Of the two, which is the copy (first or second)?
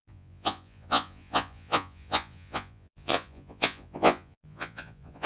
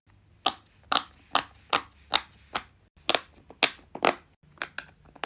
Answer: first